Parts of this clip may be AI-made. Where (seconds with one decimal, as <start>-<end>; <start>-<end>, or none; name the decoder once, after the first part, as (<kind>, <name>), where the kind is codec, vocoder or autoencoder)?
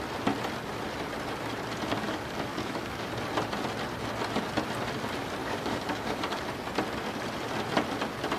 1.9-3.1 (codec, DAC); 5.4-6.4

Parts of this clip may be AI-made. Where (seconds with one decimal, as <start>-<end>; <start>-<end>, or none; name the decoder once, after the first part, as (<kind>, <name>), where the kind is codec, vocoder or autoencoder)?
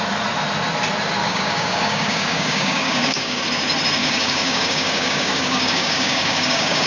1.2-3.4 (codec, DAC); 4.0-6.9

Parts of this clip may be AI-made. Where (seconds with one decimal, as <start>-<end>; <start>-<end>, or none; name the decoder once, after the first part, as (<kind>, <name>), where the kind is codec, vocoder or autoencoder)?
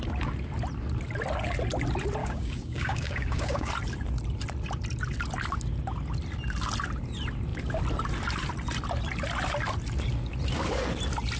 2.2-3.7 (codec, DAC)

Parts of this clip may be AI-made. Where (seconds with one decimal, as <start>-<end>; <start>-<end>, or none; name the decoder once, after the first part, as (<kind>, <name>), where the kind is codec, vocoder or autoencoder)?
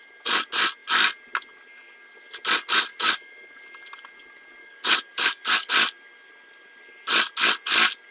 2.9-3.6 (codec, DAC); 4.6-5.7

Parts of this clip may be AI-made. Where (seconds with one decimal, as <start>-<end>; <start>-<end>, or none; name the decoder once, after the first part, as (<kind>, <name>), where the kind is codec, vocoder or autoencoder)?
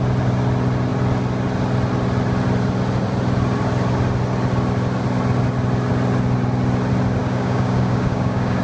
7.2-8.6 (codec, DAC)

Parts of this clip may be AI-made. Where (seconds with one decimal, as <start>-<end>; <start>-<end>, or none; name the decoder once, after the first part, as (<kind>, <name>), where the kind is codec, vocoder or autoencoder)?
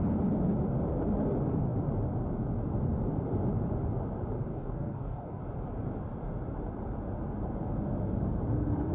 4.5-5.4 (codec, DAC)